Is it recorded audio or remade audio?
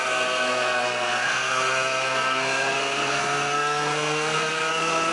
remade